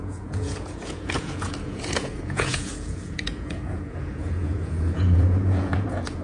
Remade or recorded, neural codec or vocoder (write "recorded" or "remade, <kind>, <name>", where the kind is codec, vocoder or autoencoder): remade, vocoder, Vocos